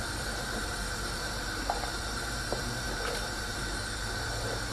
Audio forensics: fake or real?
fake